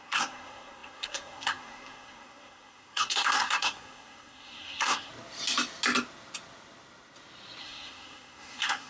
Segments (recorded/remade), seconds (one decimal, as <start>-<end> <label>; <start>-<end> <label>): 0.0-5.1 remade; 5.1-7.6 recorded; 7.6-8.9 remade